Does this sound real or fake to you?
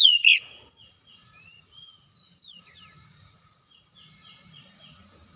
fake